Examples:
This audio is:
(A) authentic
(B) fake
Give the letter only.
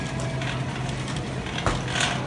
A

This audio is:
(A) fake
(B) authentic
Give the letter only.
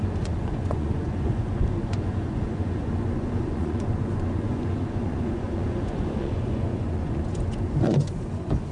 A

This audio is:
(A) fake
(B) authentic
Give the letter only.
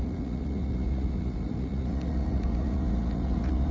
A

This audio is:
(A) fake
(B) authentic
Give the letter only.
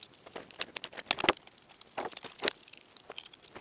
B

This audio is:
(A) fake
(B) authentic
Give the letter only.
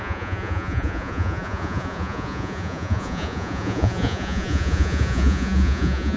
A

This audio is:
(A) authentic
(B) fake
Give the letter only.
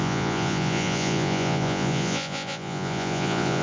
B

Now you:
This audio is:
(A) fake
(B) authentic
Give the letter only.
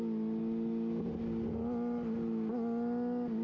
B